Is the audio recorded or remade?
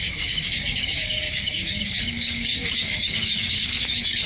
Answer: remade